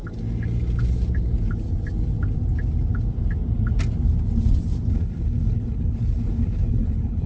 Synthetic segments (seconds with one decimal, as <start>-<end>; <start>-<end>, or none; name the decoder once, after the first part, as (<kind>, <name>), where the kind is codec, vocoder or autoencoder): 4.9-7.3 (codec, HILCodec)